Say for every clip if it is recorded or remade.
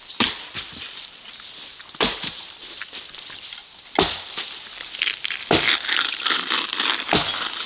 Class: remade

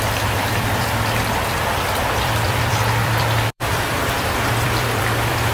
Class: remade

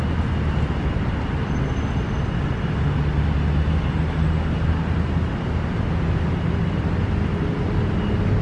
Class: recorded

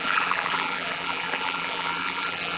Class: remade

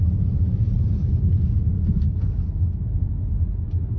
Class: recorded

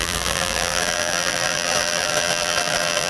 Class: remade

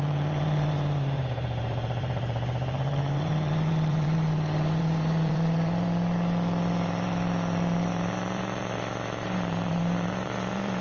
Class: remade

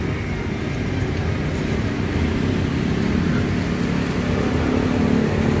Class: recorded